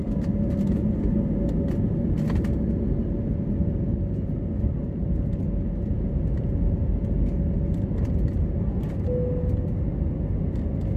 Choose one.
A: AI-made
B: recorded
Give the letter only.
B